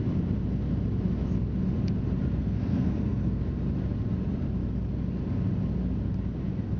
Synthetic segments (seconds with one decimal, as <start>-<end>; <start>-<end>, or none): 2.4-3.4